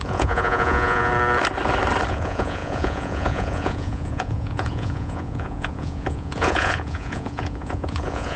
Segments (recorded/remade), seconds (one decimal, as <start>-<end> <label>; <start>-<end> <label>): 0.0-1.1 remade; 1.1-2.1 recorded; 2.1-8.4 remade